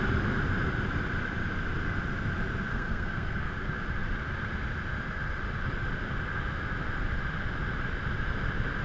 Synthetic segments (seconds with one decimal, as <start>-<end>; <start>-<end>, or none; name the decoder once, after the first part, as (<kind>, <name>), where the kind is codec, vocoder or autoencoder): 2.7-3.5 (codec, SNAC)